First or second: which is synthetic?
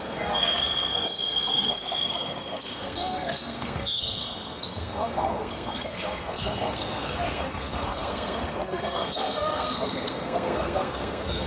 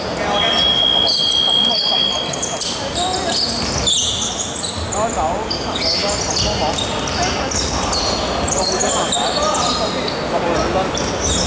first